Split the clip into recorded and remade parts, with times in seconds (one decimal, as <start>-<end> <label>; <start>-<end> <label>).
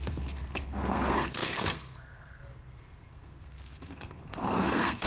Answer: 0.0-5.1 remade